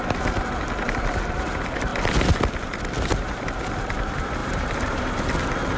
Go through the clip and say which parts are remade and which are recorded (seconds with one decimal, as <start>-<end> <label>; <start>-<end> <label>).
0.0-4.4 recorded; 4.4-5.0 remade; 5.0-5.8 recorded

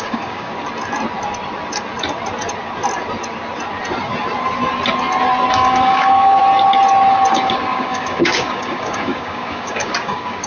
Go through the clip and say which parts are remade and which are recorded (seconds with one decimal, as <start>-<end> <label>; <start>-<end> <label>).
0.0-0.5 remade; 0.5-5.5 recorded; 5.5-6.4 remade; 6.4-7.3 recorded; 7.3-10.5 remade

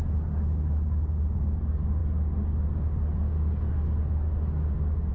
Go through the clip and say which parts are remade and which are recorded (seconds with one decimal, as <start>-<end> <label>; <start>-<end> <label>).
0.0-5.1 recorded

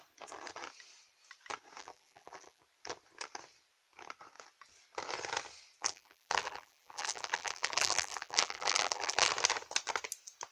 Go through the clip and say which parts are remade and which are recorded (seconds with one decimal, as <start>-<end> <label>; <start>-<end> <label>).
0.0-1.8 recorded; 1.8-2.6 remade; 2.6-5.8 recorded; 5.8-9.3 remade; 9.3-10.5 recorded

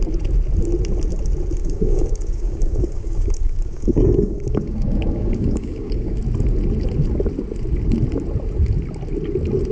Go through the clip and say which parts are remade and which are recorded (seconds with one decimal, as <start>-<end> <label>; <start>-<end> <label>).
0.0-1.6 recorded; 1.6-6.2 remade; 6.2-9.7 recorded

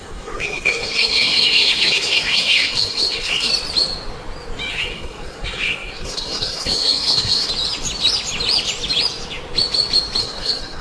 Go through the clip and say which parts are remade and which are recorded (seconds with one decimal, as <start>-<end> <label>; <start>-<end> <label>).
0.0-3.5 remade; 3.5-4.7 recorded; 4.7-7.5 remade; 7.5-10.2 recorded; 10.2-10.8 remade

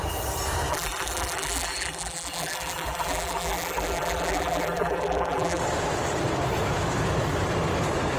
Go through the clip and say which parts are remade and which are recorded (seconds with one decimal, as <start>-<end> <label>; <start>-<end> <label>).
0.0-0.7 recorded; 0.7-5.6 remade; 5.6-8.2 recorded